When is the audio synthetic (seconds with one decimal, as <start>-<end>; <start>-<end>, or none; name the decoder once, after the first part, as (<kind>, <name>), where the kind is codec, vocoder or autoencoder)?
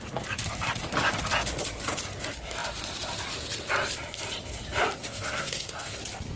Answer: 5.0-6.0 (codec, SNAC)